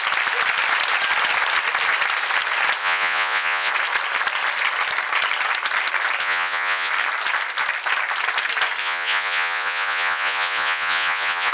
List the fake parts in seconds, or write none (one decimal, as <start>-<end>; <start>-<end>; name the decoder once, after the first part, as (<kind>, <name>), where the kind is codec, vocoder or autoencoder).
2.8-3.7 (vocoder, Vocos); 6.2-6.9; 8.8-11.5